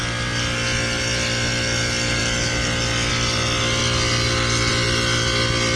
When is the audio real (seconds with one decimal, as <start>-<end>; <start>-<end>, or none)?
0.0-5.8